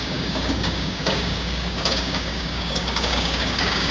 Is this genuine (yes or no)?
no